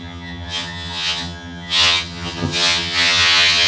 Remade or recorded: remade